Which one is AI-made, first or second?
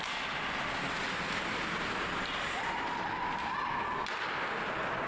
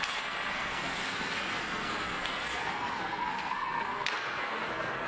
second